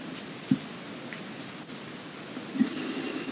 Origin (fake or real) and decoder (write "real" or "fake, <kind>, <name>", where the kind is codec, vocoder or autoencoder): real